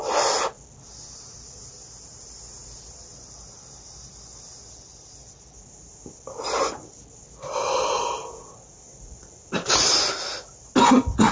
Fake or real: real